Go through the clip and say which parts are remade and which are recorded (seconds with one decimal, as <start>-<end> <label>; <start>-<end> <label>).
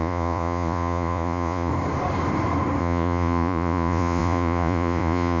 0.0-1.7 remade; 1.7-2.8 recorded; 2.8-5.4 remade